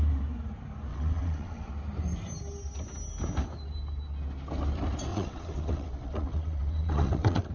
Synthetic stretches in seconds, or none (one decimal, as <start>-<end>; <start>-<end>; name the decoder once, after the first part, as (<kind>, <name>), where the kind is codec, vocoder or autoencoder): 0.9-1.7 (vocoder, WaveNeXt); 5.1-7.5

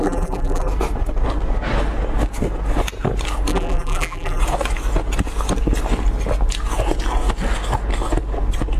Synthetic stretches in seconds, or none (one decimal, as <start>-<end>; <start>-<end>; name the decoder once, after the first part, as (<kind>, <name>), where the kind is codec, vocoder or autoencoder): 0.0-0.7 (vocoder, BigVGAN v2); 3.5-4.4

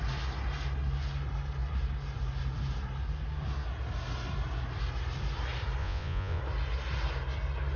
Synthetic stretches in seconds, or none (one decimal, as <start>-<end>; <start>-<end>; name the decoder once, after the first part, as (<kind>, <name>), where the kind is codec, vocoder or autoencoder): 5.8-6.4 (vocoder, Vocos)